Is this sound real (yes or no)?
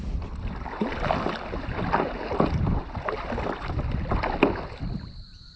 yes